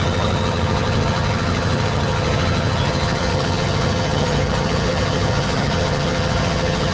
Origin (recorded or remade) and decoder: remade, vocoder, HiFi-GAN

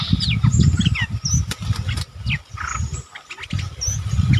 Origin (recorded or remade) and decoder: recorded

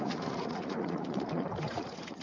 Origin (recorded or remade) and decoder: remade, vocoder, Vocos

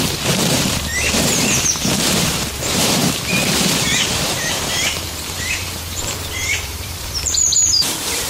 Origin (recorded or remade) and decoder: remade, vocoder, BigVGAN v2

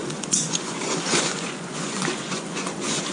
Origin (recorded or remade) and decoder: remade, vocoder, Vocos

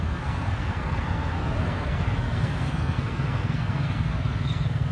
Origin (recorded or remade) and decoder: remade, codec, SNAC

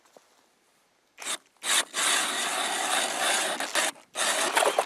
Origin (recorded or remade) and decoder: recorded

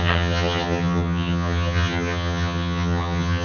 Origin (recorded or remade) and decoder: remade, vocoder, HiFi-GAN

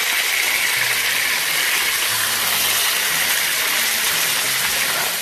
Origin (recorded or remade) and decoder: recorded